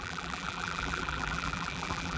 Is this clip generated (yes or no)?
yes